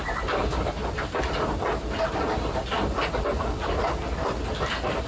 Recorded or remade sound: recorded